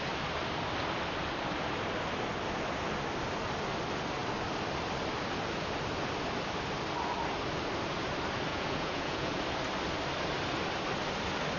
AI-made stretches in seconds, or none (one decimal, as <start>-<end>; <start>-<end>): 8.5-9.4

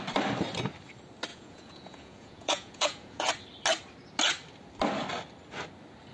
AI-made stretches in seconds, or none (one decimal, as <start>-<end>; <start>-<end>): 1.3-3.3

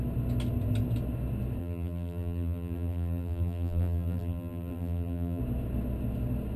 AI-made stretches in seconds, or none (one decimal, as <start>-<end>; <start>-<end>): 1.6-5.4

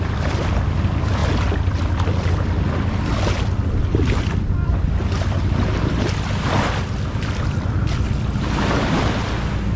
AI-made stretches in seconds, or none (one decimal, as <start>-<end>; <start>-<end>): none

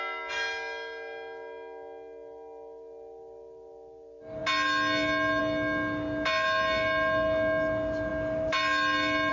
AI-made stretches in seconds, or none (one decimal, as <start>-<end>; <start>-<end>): none